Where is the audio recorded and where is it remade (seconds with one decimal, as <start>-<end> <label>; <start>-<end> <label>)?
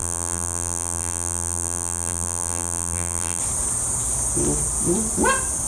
0.0-3.4 remade; 3.4-5.7 recorded